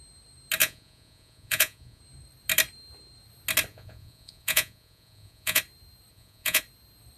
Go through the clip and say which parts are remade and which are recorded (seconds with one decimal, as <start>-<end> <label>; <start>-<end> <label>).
0.0-0.6 recorded; 0.6-2.0 remade; 2.0-3.7 recorded; 3.7-5.6 remade; 5.6-6.1 recorded; 6.1-6.6 remade; 6.6-7.2 recorded